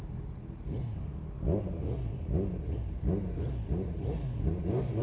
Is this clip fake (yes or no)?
no